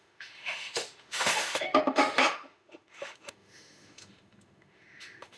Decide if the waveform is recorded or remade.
remade